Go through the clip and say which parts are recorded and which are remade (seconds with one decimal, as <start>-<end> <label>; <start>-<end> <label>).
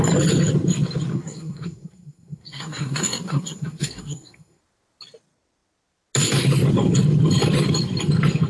0.0-1.1 recorded; 1.1-4.6 remade; 4.6-8.5 recorded